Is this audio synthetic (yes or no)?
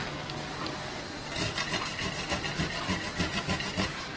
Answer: no